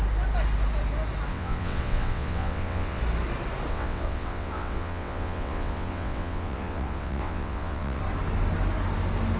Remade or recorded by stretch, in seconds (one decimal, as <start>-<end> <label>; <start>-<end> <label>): 0.0-1.3 recorded; 1.3-3.0 remade; 3.0-3.7 recorded; 3.7-8.0 remade; 8.0-9.4 recorded